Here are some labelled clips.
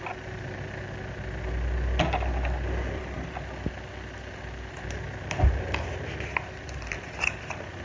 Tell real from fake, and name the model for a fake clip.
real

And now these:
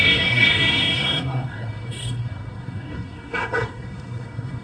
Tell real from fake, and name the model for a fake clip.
fake, codec, SNAC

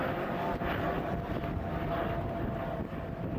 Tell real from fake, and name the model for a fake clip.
real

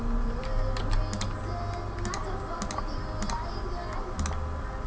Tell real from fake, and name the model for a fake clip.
real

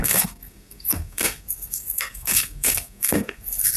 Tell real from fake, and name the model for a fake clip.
fake, codec, SNAC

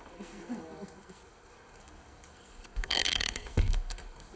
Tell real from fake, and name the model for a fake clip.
fake, codec, SNAC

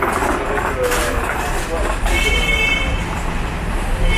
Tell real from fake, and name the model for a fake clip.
real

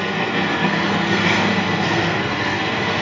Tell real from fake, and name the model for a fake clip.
fake, codec, SNAC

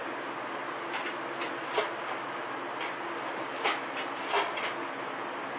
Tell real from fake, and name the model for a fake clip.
real